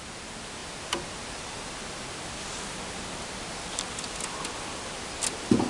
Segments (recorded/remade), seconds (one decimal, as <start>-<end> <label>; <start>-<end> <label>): 0.0-5.7 recorded